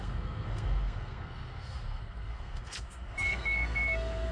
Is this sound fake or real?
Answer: fake